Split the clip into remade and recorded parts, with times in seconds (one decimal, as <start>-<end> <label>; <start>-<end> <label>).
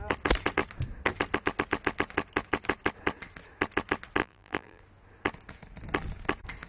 0.0-4.2 recorded; 4.2-4.8 remade; 4.8-6.7 recorded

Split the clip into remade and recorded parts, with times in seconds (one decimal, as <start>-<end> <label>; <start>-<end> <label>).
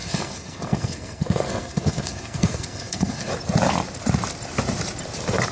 0.0-3.3 remade; 3.3-5.5 recorded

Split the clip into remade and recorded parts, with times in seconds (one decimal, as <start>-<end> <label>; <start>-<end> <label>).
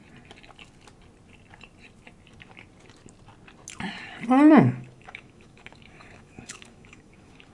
0.0-4.5 recorded; 4.5-7.5 remade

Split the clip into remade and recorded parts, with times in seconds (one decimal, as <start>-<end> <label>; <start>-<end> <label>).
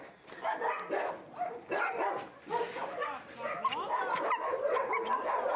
0.0-5.6 recorded